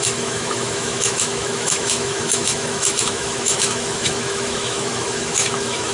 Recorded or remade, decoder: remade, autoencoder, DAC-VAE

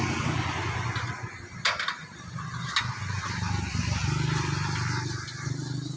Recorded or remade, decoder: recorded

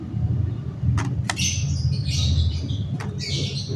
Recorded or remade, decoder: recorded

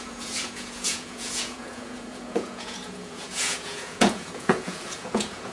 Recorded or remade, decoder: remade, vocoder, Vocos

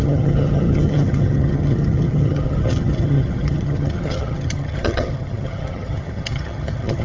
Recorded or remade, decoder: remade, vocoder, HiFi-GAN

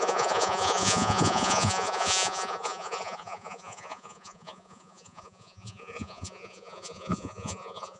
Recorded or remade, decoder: remade, vocoder, Vocos